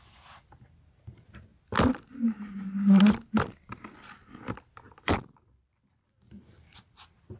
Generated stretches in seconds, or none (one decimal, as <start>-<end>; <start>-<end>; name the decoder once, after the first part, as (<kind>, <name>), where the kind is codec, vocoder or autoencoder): 0.0-1.5 (vocoder, BigVGAN v2); 4.3-7.4